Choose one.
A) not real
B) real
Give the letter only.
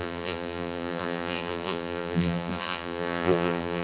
A